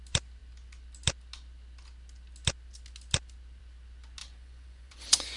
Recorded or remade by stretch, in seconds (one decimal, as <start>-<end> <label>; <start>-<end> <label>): 0.0-4.2 recorded; 4.2-5.4 remade